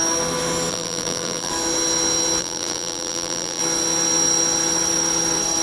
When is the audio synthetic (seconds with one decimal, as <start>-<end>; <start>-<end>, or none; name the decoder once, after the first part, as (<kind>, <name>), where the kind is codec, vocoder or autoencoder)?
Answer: 0.7-1.5 (vocoder, BigVGAN v2); 2.4-3.6